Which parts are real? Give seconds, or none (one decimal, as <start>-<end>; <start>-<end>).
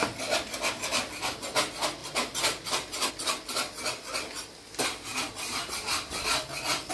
0.0-2.0; 3.1-6.9